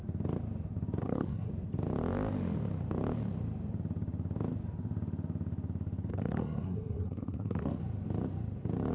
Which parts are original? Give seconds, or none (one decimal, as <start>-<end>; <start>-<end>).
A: 0.0-1.0; 1.5-6.1; 7.8-8.9